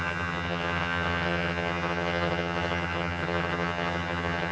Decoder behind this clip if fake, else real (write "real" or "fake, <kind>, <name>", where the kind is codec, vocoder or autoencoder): fake, vocoder, HiFi-GAN